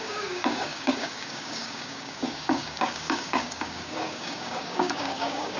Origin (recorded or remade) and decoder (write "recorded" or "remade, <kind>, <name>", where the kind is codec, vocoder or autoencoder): remade, codec, DAC